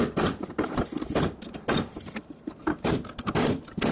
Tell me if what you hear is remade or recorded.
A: recorded